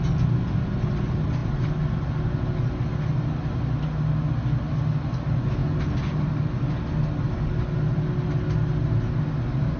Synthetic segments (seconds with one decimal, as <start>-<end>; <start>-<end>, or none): none